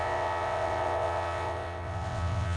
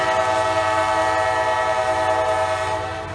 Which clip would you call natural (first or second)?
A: second